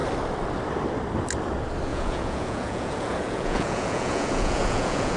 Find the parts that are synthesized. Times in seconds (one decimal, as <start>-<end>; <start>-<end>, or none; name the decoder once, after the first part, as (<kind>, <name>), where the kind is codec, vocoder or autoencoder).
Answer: 1.9-5.2 (vocoder, Vocos)